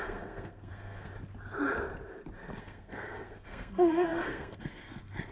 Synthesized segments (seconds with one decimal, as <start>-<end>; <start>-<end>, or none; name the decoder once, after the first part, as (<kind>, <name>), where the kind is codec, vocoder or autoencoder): 0.0-1.1 (codec, SNAC); 2.6-5.3